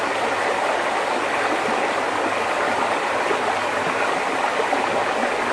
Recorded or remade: recorded